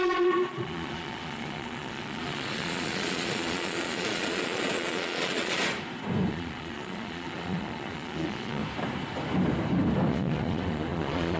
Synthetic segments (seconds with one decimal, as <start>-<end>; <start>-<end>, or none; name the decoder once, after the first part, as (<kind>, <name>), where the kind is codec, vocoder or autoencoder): 0.0-5.6 (vocoder, Vocos); 6.3-8.6; 10.1-11.4